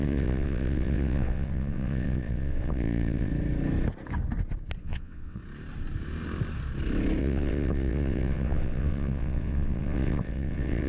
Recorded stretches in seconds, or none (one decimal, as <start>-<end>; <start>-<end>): 3.3-4.8; 5.4-7.2